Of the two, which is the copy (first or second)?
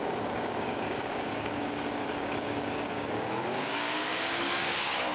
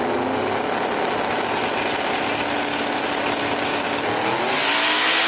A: first